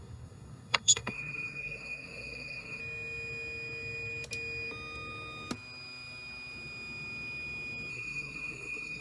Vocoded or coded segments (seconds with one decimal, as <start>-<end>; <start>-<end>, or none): 0.0-2.8; 7.9-9.0